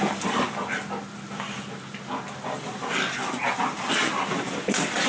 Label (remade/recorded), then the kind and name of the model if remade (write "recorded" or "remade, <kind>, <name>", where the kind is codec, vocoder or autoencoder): recorded